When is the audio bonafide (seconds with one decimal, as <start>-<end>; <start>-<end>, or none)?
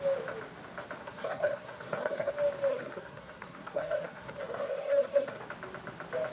0.0-1.0; 2.3-2.7; 5.4-6.3